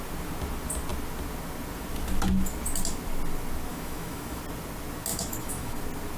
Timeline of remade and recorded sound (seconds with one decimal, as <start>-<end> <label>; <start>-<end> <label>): 0.0-3.7 recorded; 3.7-4.4 remade; 4.4-5.1 recorded; 5.1-5.8 remade; 5.8-6.2 recorded